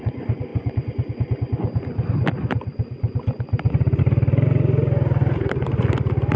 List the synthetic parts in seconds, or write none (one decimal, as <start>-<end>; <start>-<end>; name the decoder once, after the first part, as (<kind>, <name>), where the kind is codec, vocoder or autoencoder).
5.2-5.8 (vocoder, BigVGAN v2)